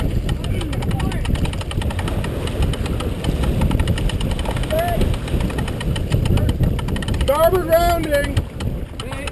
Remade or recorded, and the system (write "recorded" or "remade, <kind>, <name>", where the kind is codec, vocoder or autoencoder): recorded